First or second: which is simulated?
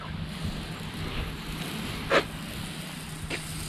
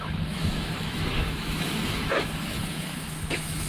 second